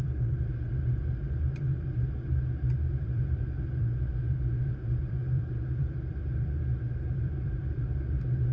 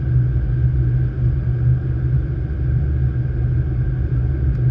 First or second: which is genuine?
second